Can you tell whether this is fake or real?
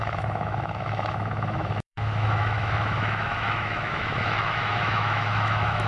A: fake